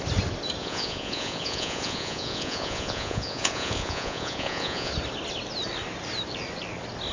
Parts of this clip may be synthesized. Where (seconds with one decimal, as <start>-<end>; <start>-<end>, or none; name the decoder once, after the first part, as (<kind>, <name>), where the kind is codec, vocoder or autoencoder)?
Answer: 0.6-4.9 (vocoder, Vocos)